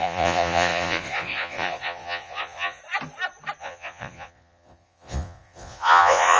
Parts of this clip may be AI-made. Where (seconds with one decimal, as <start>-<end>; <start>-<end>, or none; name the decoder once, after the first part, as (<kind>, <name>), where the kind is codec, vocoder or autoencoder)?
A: 0.0-2.8 (vocoder, Vocos); 3.6-6.4